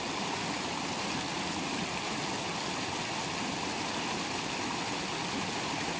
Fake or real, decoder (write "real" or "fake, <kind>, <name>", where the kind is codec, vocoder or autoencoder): real